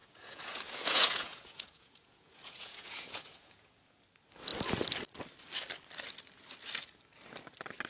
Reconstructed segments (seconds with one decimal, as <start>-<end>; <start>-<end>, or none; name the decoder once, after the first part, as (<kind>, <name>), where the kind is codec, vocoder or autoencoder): 0.0-4.0 (vocoder, Vocos)